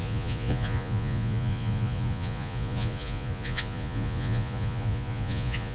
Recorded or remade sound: remade